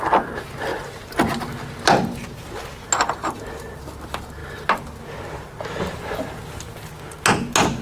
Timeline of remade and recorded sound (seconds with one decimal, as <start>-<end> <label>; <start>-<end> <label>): 0.0-7.8 recorded